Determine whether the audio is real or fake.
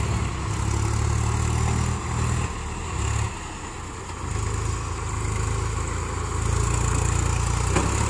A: real